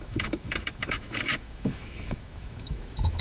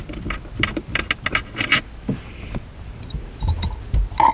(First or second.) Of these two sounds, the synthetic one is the first